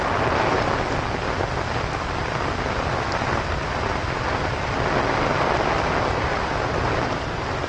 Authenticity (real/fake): real